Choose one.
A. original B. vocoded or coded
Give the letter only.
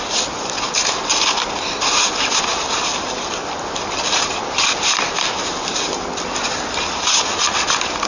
A